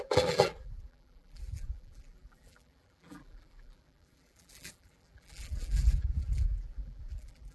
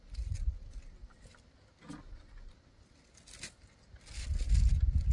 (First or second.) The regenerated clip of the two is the first